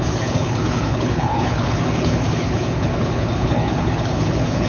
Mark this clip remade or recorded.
remade